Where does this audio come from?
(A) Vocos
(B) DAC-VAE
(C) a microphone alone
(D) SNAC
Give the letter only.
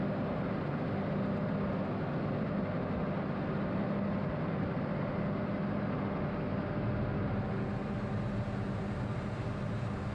C